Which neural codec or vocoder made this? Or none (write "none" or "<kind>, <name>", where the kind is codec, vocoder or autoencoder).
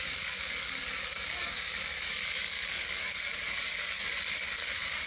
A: codec, DAC